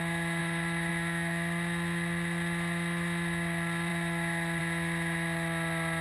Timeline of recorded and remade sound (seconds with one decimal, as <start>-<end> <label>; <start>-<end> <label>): 0.0-0.4 recorded; 0.4-0.9 remade; 0.9-6.0 recorded